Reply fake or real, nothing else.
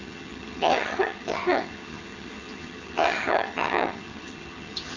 fake